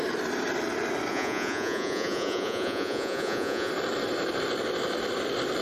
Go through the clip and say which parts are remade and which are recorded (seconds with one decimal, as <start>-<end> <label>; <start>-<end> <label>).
0.0-1.1 recorded; 1.1-3.7 remade; 3.7-5.6 recorded